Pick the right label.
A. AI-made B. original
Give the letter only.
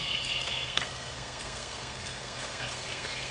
A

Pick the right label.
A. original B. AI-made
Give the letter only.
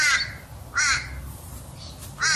A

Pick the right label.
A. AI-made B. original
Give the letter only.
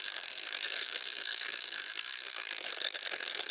A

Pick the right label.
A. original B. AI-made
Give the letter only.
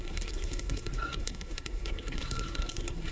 B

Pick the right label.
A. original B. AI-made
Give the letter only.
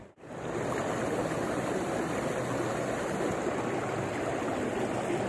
A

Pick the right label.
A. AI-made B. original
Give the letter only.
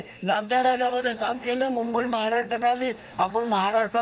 A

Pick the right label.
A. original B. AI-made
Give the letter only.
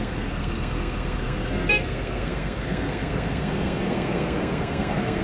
B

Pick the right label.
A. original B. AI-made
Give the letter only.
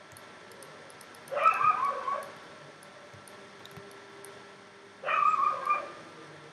A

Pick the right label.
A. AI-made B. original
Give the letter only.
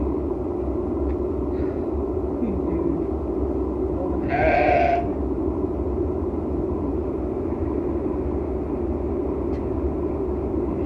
B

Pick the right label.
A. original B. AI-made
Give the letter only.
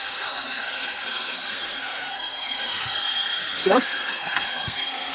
B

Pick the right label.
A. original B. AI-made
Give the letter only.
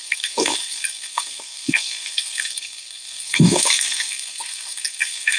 B